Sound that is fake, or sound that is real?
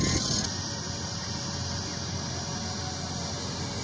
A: real